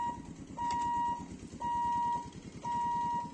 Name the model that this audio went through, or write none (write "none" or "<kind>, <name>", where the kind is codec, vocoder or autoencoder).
none